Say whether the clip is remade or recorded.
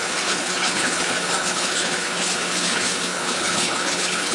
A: remade